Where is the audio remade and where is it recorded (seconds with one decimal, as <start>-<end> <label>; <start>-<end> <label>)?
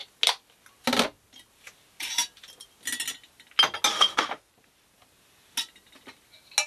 0.0-3.9 recorded; 3.9-4.5 remade; 4.5-6.7 recorded